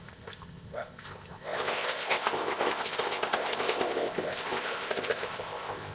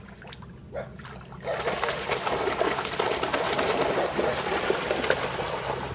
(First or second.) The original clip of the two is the second